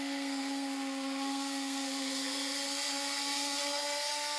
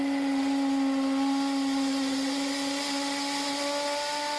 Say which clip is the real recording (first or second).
second